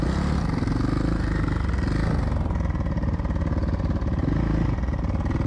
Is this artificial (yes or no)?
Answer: no